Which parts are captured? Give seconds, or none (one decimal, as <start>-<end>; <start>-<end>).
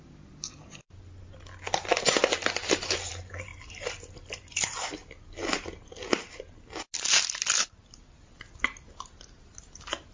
0.0-10.1